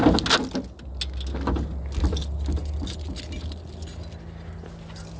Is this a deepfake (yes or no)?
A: no